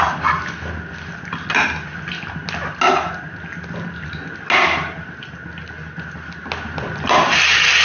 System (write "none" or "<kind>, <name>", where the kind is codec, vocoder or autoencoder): none